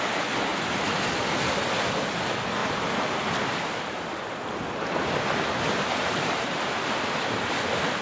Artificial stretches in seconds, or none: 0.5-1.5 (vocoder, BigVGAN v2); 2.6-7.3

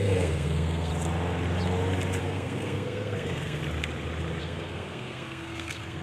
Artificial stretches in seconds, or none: 0.0-0.9 (codec, SNAC); 2.2-3.6; 4.4-6.0

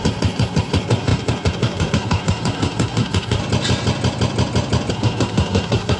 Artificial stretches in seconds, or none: 0.0-3.4 (codec, SNAC); 4.9-6.0